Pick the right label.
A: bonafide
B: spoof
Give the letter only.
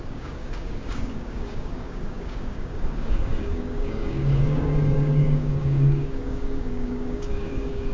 B